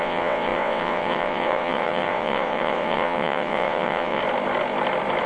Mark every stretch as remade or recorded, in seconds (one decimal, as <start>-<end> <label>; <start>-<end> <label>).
0.0-4.2 remade; 4.2-5.3 recorded